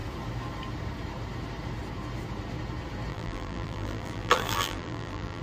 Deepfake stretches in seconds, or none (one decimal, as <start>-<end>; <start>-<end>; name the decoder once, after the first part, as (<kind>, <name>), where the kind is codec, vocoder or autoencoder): 3.1-5.4 (vocoder, BigVGAN v2)